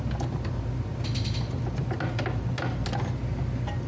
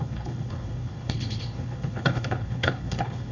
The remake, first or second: second